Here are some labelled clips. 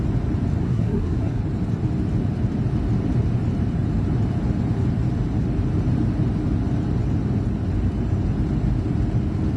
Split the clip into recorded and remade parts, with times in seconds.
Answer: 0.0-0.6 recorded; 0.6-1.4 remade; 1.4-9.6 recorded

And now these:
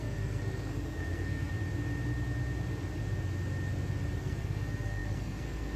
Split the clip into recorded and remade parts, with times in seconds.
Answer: 0.0-1.5 remade; 1.5-4.2 recorded; 4.2-5.8 remade